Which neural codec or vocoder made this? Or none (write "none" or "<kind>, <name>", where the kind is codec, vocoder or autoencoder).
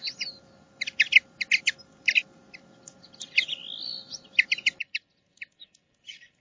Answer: none